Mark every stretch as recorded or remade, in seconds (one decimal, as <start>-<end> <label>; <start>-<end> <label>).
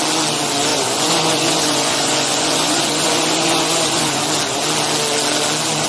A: 0.0-0.7 recorded; 0.7-4.2 remade; 4.2-5.9 recorded